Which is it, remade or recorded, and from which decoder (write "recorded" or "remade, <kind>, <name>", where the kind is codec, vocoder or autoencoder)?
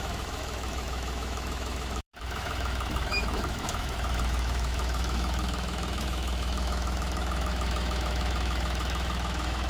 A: remade, autoencoder, DAC-VAE